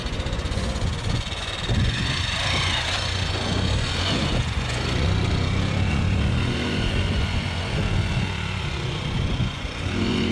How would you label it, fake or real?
fake